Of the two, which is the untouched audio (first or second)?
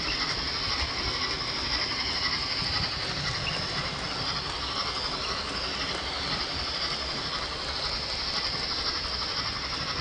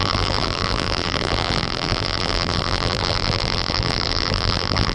first